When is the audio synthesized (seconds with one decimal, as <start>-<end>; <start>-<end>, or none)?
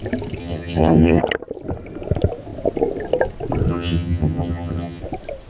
0.4-1.2; 3.7-5.0